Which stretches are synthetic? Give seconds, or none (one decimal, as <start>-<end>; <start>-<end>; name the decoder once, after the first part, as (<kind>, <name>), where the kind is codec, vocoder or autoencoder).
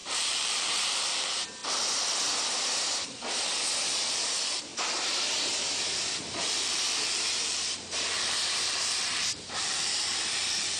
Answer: 0.0-1.6 (vocoder, BigVGAN v2); 4.1-4.7; 6.2-10.8